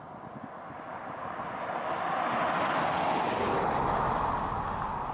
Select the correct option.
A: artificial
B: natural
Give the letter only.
B